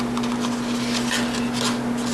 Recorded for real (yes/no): yes